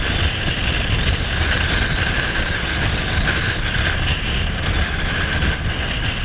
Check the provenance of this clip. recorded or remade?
recorded